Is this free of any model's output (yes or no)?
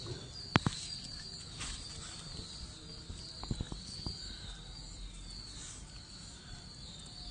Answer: yes